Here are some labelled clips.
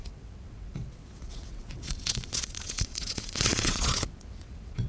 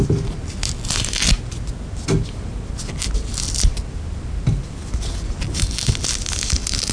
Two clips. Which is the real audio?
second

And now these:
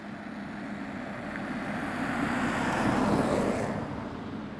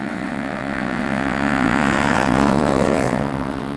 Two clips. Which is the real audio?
first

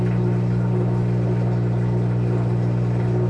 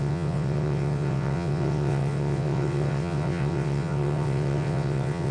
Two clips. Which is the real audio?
first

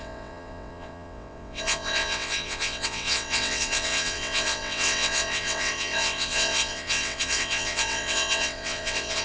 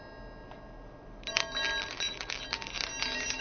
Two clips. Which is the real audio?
second